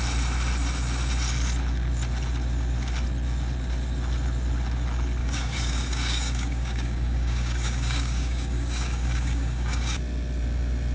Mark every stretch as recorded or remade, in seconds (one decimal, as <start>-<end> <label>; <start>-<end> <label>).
0.0-5.2 recorded; 5.2-10.0 remade; 10.0-10.9 recorded